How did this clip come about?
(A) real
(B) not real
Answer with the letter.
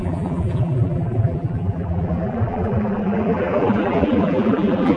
B